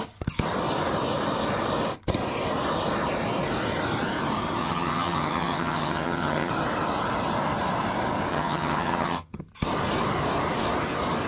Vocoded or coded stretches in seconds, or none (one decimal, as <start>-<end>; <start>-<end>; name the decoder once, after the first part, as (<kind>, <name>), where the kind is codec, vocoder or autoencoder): 4.6-6.5 (vocoder, HiFi-GAN); 8.3-9.4